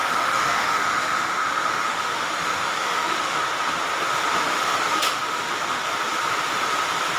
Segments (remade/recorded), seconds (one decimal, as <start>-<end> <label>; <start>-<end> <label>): 0.0-3.4 remade; 3.4-4.4 recorded; 4.4-5.9 remade; 5.9-7.2 recorded